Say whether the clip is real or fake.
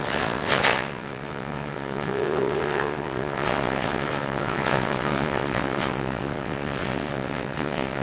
fake